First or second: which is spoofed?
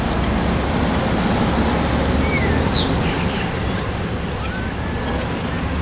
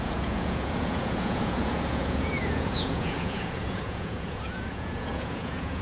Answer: second